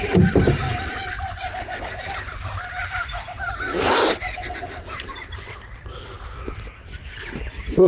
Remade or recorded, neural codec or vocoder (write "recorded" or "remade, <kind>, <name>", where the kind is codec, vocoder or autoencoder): remade, vocoder, BigVGAN v2